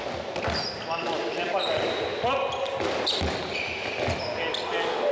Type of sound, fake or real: real